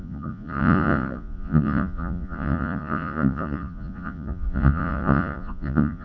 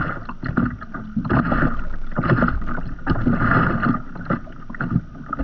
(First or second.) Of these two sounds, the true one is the second